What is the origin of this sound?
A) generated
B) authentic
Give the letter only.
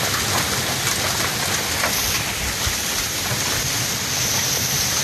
A